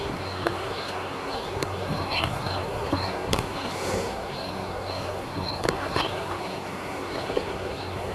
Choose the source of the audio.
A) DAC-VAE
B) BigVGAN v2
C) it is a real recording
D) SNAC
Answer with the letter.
D